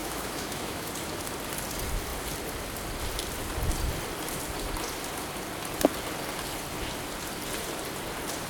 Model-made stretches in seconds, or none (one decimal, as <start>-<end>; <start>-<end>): 0.0-0.9